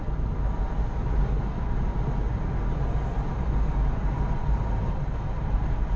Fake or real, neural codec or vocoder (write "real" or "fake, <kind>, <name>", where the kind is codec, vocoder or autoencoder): real